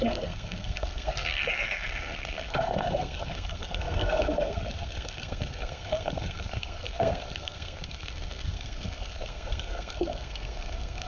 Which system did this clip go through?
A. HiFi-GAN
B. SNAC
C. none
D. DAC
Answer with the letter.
B